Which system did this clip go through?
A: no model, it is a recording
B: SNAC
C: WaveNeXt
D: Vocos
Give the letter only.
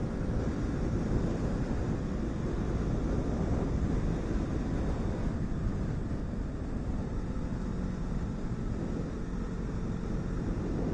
A